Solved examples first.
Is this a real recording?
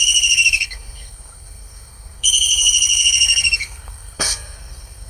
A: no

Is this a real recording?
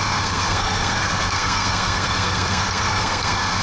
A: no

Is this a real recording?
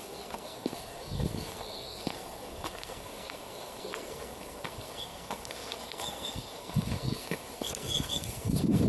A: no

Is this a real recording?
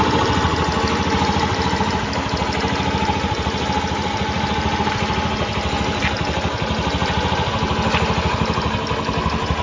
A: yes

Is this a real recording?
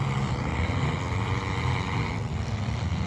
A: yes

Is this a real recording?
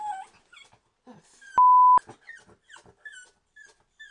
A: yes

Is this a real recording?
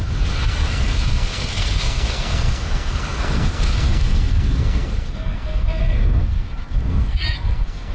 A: no